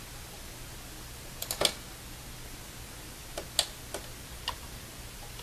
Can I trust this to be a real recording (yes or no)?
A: yes